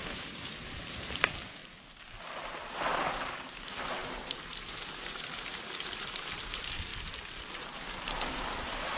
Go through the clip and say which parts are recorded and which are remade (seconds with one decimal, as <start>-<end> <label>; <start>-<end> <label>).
0.0-1.6 remade; 1.6-2.6 recorded; 2.6-6.9 remade; 6.9-7.5 recorded; 7.5-9.0 remade